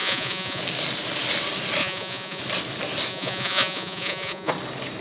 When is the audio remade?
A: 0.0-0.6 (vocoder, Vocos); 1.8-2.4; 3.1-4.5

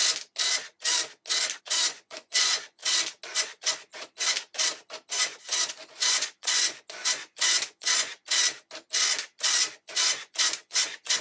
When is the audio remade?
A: 1.6-2.8 (vocoder, Vocos); 3.3-3.9; 5.1-8.1; 9.7-11.2

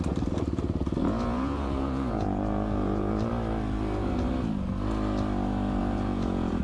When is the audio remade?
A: 1.0-3.3 (vocoder, Vocos); 5.8-6.6

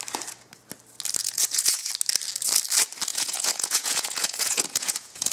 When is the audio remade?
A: 1.2-1.9 (vocoder, Vocos); 3.1-5.3